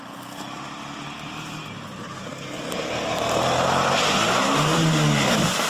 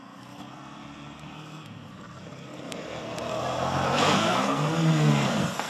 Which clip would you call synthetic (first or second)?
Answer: second